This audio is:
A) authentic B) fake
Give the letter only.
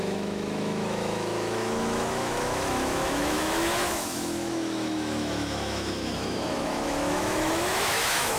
B